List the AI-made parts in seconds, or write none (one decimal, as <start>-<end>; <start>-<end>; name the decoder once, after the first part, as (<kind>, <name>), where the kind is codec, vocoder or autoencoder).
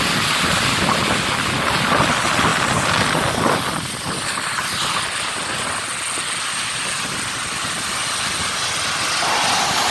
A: none